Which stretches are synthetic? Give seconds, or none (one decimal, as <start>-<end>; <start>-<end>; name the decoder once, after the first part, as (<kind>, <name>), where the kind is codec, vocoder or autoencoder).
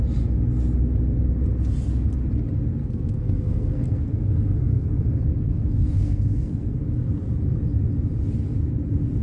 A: 2.8-6.8 (codec, SNAC)